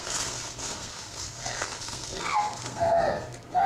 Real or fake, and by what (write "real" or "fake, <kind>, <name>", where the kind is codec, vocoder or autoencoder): fake, codec, SNAC